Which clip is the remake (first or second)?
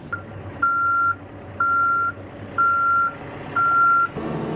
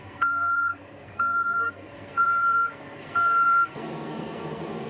second